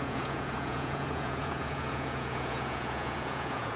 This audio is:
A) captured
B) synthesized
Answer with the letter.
B